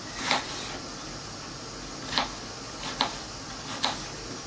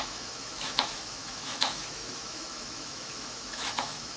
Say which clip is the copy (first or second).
second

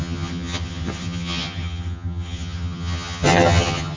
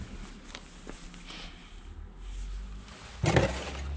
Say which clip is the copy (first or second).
first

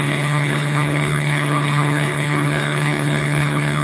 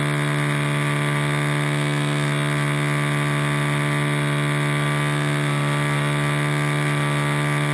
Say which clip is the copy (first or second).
first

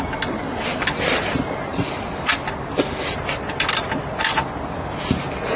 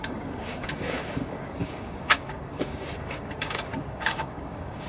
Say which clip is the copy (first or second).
second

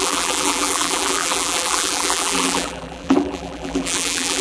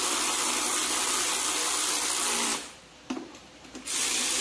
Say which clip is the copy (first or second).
first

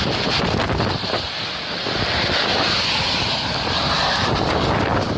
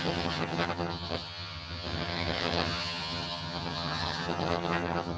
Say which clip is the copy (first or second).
second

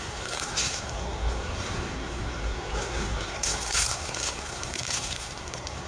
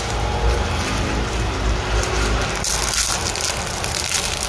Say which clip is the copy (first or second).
first